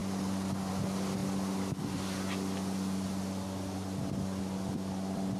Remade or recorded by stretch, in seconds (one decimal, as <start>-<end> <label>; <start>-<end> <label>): 0.0-5.4 recorded